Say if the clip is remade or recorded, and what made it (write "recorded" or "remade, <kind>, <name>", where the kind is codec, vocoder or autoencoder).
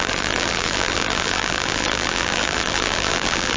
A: remade, vocoder, BigVGAN v2